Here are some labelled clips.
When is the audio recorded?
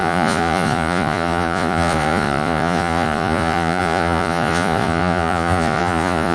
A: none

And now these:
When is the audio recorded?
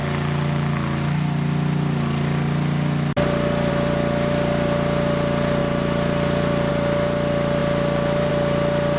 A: 0.0-9.0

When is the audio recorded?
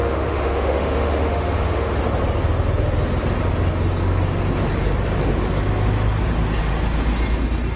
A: 2.0-7.8